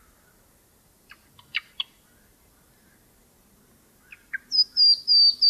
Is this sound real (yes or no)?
yes